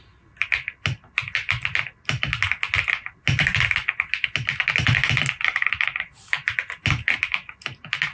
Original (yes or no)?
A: yes